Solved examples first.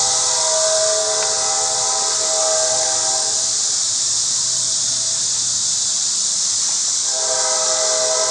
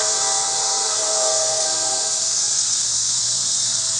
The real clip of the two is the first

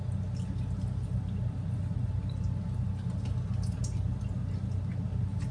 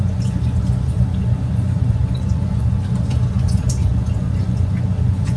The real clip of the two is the first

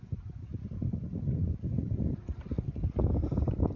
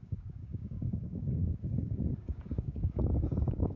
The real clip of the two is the first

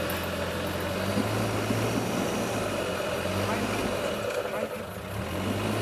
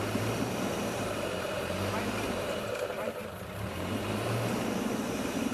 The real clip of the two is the first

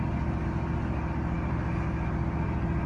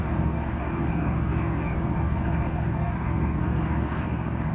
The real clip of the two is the first